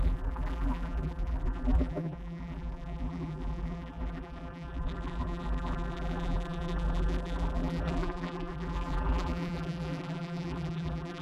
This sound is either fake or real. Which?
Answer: fake